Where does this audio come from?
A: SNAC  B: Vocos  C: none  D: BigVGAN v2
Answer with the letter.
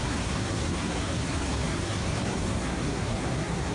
A